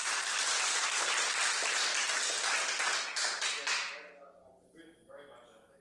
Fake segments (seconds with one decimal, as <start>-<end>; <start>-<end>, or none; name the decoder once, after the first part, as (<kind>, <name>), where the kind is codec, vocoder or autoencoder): 0.0-1.1 (vocoder, BigVGAN v2)